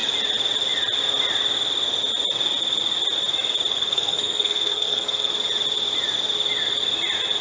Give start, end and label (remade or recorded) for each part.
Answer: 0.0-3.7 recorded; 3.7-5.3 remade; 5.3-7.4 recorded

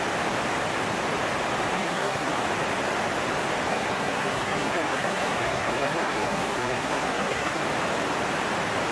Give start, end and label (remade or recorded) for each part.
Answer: 0.0-1.7 recorded; 1.7-2.3 remade; 2.3-3.7 recorded; 3.7-7.6 remade; 7.6-8.9 recorded

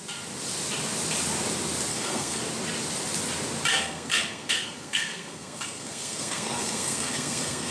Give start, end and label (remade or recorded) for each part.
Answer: 0.0-1.9 recorded; 1.9-2.4 remade; 2.4-3.7 recorded; 3.7-7.7 remade

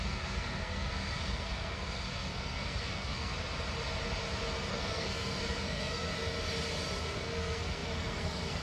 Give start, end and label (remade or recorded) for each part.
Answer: 0.0-3.3 remade; 3.3-4.7 recorded; 4.7-6.1 remade; 6.1-7.0 recorded; 7.0-8.6 remade

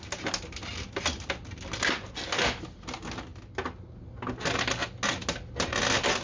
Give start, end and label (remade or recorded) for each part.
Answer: 0.0-6.2 recorded

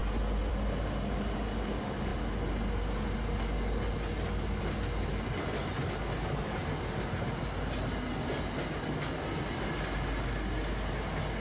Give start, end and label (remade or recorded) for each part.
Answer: 0.0-11.4 recorded

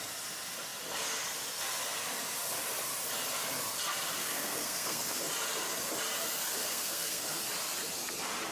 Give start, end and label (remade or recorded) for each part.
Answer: 0.0-4.2 recorded; 4.2-5.2 remade; 5.2-6.6 recorded; 6.6-7.4 remade; 7.4-8.5 recorded

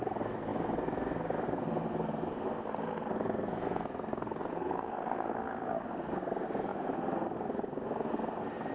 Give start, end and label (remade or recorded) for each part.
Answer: 0.0-8.7 remade